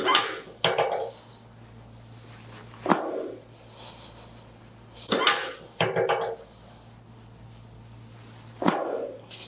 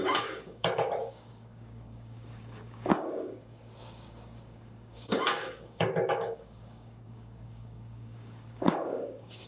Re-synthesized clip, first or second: second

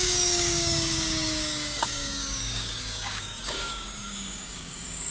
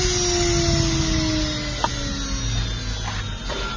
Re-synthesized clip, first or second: first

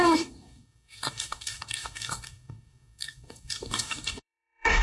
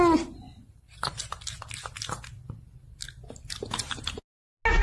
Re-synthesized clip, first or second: first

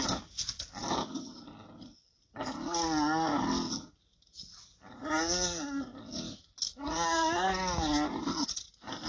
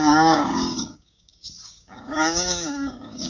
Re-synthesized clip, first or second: second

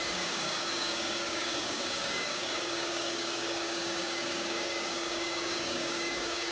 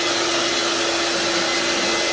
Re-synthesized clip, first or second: first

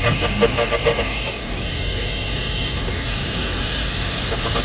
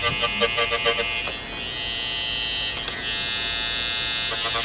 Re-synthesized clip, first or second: first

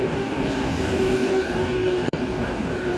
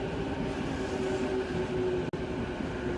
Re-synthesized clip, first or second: first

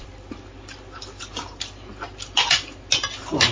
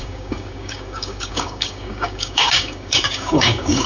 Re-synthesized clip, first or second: second